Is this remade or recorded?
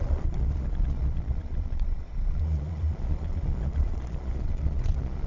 remade